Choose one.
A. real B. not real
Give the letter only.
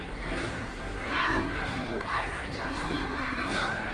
B